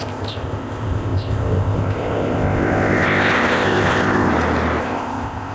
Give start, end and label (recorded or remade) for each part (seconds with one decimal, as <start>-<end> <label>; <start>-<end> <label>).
0.0-4.3 remade; 4.3-4.8 recorded; 4.8-5.5 remade